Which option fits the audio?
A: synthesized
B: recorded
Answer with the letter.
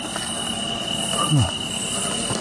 B